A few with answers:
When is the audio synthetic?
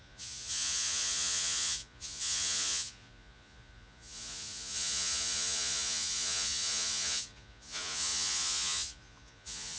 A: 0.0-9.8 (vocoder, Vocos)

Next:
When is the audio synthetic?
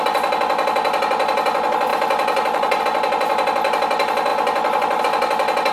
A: 1.9-2.8 (vocoder, BigVGAN v2)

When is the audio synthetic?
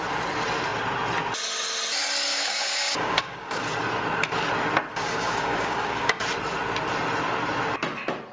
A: 2.3-3.6 (codec, DAC); 4.9-6.2